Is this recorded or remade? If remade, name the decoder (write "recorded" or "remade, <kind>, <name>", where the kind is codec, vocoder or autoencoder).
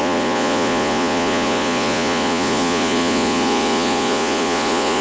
remade, vocoder, Vocos